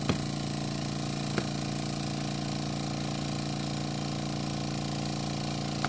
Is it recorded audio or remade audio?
recorded